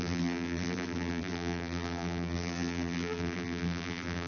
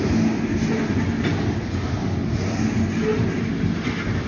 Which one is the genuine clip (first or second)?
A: second